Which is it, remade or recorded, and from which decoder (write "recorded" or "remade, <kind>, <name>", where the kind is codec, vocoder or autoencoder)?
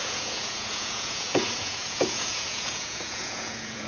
remade, vocoder, Vocos